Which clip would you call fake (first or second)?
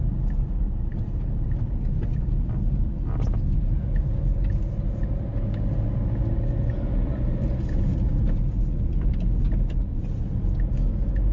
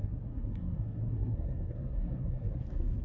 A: second